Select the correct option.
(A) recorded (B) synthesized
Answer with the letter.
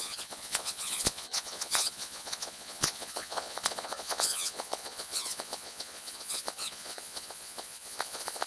B